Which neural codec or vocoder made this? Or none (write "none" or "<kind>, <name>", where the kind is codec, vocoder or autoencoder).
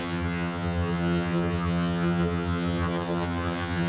vocoder, HiFi-GAN